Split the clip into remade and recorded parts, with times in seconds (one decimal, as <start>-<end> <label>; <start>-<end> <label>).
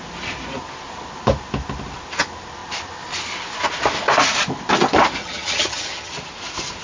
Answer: 0.0-5.2 recorded; 5.2-6.1 remade; 6.1-6.8 recorded